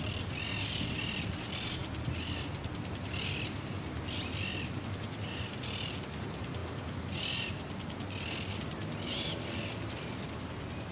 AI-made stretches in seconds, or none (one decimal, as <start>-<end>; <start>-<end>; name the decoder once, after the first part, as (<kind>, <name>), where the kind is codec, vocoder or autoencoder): none